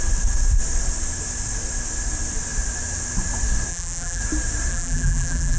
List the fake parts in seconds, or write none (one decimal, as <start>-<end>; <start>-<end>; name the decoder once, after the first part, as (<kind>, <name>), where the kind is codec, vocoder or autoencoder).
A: 3.7-4.2 (vocoder, BigVGAN v2); 4.7-5.6